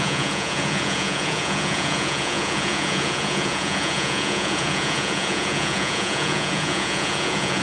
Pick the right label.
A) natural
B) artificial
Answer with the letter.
B